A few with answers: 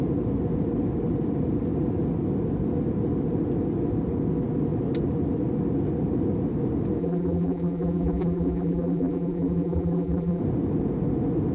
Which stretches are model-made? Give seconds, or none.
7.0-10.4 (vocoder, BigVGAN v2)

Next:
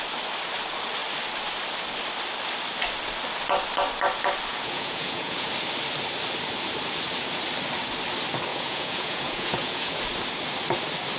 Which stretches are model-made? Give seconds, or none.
4.5-5.5 (vocoder, Vocos); 8.5-10.0

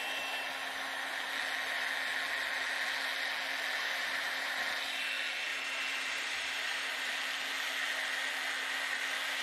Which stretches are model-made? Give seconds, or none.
3.8-4.6 (vocoder, BigVGAN v2); 5.5-7.1

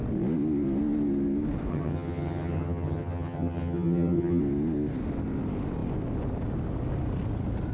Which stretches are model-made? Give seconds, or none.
1.7-4.4 (vocoder, HiFi-GAN)

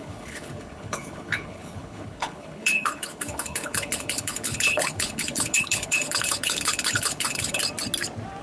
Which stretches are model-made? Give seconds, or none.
0.0-7.6 (codec, HILCodec)

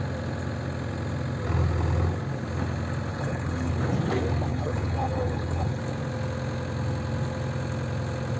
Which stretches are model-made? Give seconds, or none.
3.1-3.7 (codec, HILCodec); 4.5-5.8

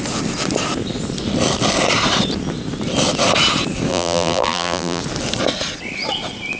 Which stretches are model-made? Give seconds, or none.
3.9-5.0 (vocoder, BigVGAN v2)

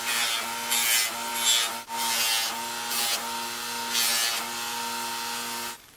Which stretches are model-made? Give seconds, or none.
none